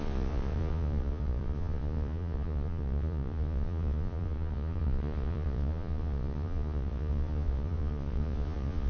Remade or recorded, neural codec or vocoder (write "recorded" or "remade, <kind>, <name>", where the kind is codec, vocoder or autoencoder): remade, vocoder, Vocos